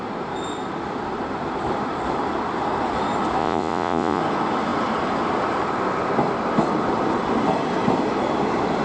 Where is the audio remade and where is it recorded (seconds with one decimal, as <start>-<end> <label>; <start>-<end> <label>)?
0.0-3.4 recorded; 3.4-4.2 remade; 4.2-8.8 recorded